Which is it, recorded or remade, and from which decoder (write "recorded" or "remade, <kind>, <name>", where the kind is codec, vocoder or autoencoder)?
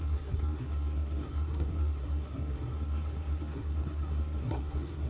remade, codec, SNAC